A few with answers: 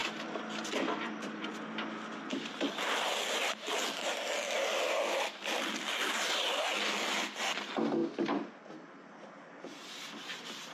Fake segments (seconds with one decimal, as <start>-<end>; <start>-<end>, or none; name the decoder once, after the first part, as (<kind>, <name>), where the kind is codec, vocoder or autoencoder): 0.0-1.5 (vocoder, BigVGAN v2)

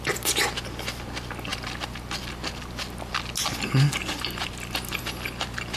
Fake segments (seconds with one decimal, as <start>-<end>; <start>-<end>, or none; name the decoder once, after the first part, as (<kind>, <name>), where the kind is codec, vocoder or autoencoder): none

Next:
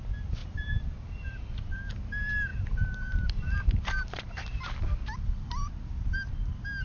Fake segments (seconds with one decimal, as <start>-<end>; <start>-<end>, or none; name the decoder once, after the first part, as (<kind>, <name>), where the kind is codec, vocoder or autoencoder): 0.4-1.8 (vocoder, BigVGAN v2); 2.5-5.7

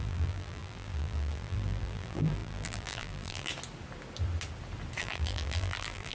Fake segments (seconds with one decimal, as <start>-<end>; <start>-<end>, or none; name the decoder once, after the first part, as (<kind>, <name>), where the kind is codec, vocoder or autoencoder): 0.0-3.5 (vocoder, BigVGAN v2); 5.0-6.1